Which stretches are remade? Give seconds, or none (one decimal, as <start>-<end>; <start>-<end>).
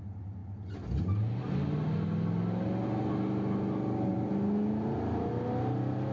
none